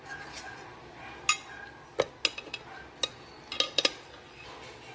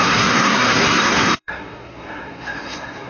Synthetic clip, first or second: second